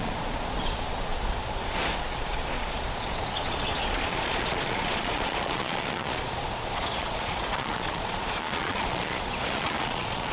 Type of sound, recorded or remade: remade